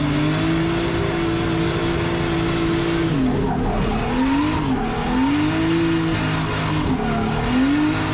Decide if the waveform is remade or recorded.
recorded